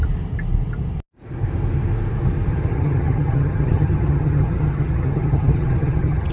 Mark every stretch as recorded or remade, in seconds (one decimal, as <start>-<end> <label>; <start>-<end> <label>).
0.0-2.5 recorded; 2.5-6.3 remade